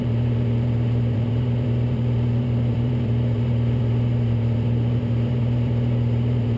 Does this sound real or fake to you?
fake